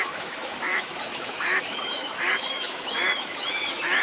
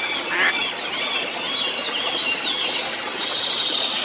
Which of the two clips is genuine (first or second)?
second